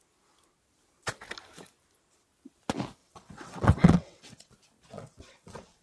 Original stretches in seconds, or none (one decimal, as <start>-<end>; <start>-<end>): 0.0-3.0; 4.5-4.9